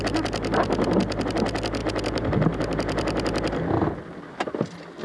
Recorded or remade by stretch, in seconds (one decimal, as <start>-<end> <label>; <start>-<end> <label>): 0.0-5.0 recorded